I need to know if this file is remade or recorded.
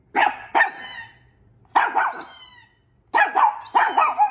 recorded